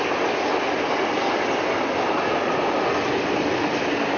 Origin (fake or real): real